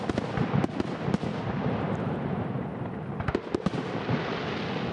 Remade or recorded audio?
recorded